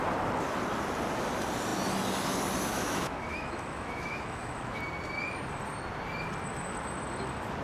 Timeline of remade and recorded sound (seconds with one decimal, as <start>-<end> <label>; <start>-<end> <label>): 0.0-2.7 recorded; 2.7-4.8 remade; 4.8-7.6 recorded